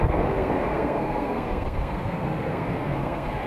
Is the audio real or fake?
fake